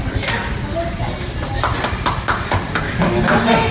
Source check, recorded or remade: recorded